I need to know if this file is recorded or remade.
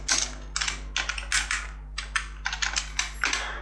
recorded